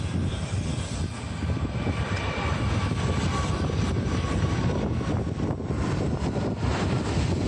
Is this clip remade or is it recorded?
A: remade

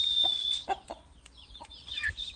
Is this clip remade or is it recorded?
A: remade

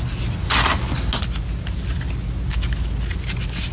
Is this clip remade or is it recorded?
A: recorded